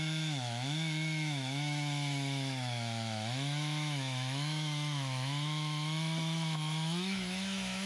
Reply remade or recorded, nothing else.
remade